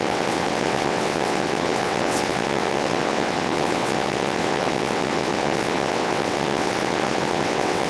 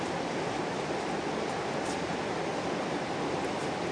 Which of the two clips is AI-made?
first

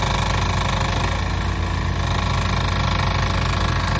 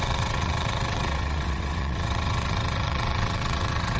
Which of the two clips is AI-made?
second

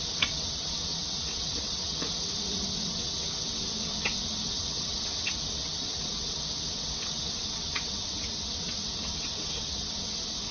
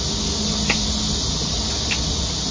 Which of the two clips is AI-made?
first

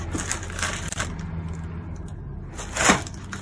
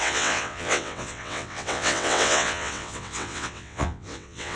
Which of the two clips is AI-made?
second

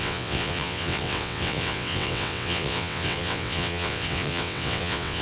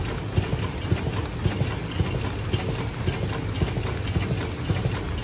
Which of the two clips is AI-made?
first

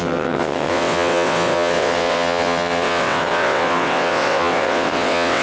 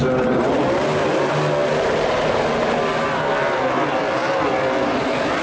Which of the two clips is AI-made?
first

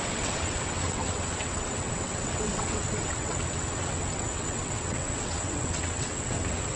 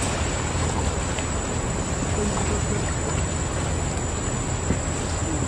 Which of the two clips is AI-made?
first